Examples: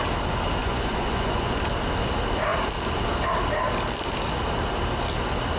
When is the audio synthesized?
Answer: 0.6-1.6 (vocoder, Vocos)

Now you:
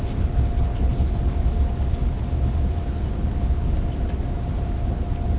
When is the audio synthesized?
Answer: none

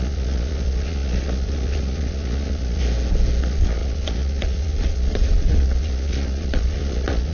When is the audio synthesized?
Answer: 0.0-2.8 (vocoder, Vocos); 3.4-7.3

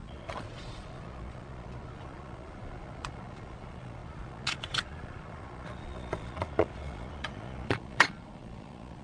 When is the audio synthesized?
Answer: 0.0-9.0 (vocoder, Vocos)

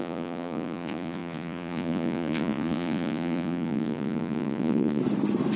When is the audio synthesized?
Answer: 0.0-5.0 (vocoder, Vocos)

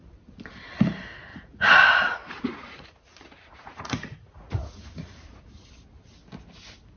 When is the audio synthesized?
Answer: 1.3-5.5 (vocoder, Vocos)

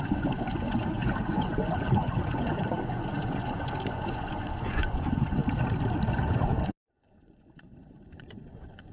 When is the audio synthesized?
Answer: 0.0-5.4 (vocoder, Vocos); 6.1-8.9

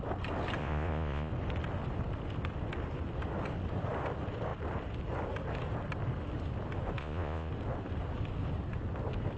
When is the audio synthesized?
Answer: 0.6-1.3 (vocoder, Vocos); 7.0-7.5